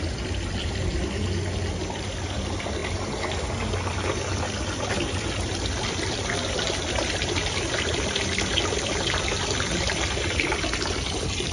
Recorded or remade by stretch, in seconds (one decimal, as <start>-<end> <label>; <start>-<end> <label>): 0.0-11.5 recorded